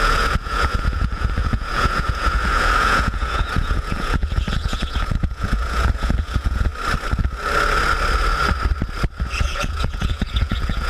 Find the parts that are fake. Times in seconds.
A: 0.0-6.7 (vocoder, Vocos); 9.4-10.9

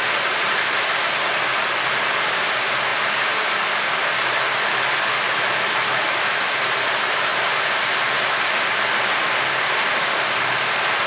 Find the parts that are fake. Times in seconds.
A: none

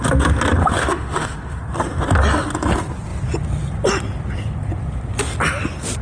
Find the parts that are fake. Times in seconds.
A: 0.6-1.6 (autoencoder, DAC-VAE)